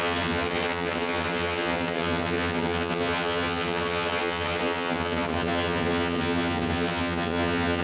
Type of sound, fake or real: fake